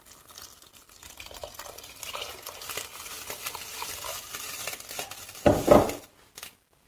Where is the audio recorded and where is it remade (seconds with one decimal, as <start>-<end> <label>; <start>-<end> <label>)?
0.0-6.9 recorded